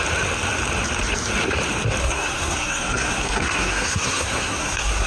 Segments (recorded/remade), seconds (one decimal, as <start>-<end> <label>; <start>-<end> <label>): 0.0-2.0 recorded; 2.0-5.1 remade